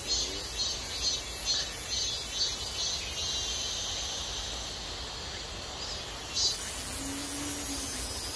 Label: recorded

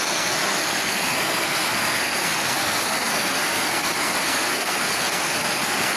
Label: remade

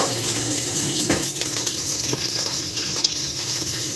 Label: remade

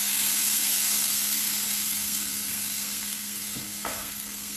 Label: remade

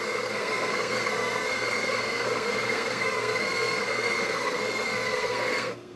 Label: remade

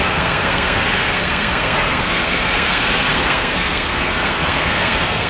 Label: remade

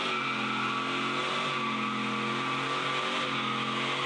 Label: recorded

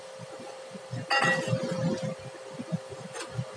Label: recorded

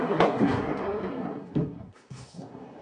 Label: remade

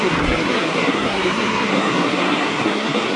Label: remade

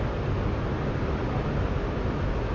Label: recorded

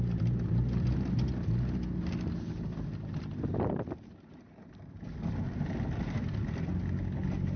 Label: recorded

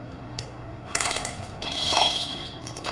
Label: remade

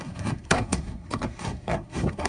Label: remade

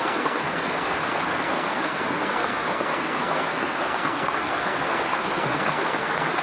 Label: remade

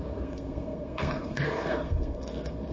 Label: remade